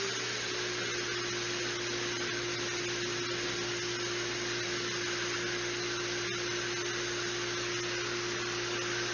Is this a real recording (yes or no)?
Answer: yes